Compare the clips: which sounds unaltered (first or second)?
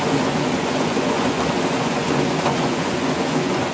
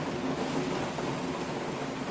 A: second